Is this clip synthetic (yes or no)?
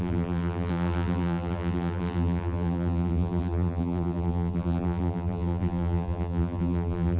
yes